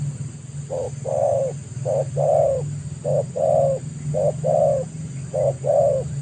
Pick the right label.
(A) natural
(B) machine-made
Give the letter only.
A